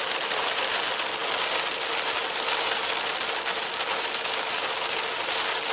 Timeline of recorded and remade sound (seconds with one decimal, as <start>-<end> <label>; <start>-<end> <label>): 0.0-5.7 recorded